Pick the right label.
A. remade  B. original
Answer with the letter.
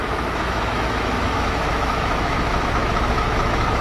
A